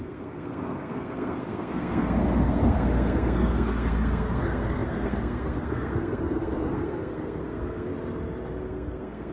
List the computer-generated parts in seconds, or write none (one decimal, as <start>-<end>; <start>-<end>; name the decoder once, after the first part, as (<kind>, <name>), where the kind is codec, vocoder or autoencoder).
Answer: 0.0-7.9 (codec, SNAC); 8.6-9.3